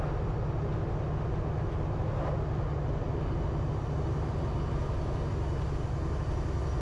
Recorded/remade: recorded